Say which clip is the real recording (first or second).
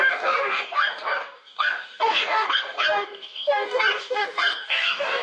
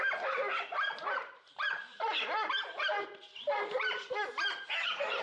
second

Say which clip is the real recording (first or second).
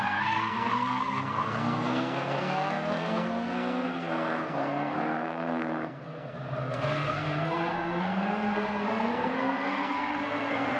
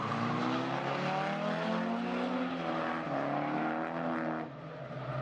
second